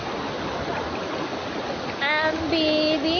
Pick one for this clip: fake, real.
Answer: real